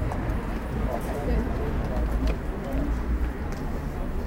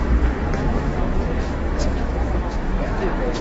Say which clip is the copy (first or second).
second